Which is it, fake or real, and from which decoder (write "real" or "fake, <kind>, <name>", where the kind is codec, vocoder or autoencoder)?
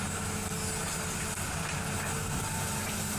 real